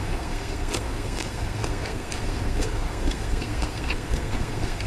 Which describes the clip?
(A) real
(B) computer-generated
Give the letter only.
B